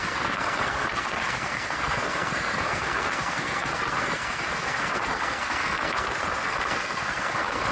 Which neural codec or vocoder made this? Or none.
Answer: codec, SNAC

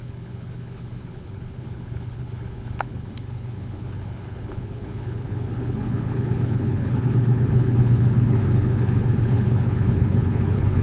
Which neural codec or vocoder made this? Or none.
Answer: codec, HILCodec